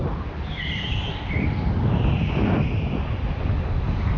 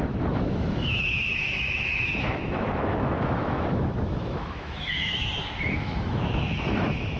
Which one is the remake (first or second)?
second